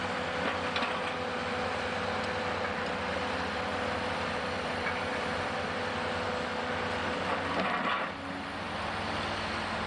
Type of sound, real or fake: real